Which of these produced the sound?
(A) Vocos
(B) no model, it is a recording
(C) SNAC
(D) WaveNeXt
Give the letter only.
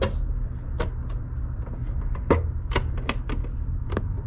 B